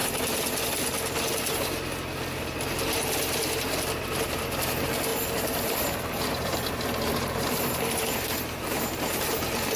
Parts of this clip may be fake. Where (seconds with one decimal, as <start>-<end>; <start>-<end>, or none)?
5.1-8.8